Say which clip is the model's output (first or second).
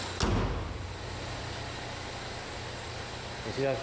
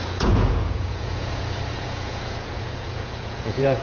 second